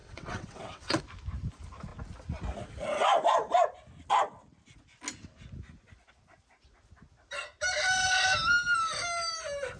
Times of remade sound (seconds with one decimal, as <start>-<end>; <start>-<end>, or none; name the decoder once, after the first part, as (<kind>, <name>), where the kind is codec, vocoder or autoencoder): 0.0-1.0 (vocoder, WaveNeXt)